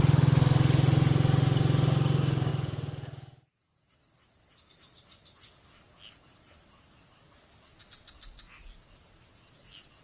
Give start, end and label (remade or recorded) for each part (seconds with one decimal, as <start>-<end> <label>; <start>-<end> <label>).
0.0-2.5 recorded; 2.5-3.9 remade; 3.9-10.0 recorded